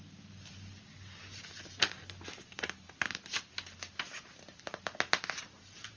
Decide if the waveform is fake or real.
real